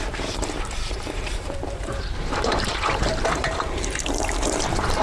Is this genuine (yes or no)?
no